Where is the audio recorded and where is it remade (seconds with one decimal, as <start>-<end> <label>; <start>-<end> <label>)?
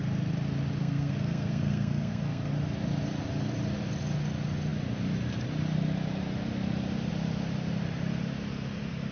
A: 0.0-0.8 recorded; 0.8-2.5 remade; 2.5-9.1 recorded